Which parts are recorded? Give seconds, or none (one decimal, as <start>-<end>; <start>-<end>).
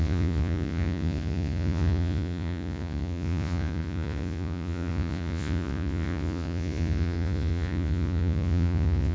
none